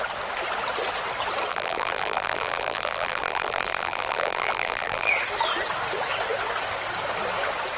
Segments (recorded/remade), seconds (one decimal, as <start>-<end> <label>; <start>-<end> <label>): 0.0-1.5 recorded; 1.5-5.1 remade; 5.1-7.8 recorded